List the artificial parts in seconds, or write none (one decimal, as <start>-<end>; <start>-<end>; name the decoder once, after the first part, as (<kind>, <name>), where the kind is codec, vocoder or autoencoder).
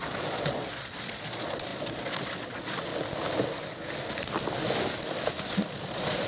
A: 0.0-2.9 (vocoder, Vocos); 5.7-6.3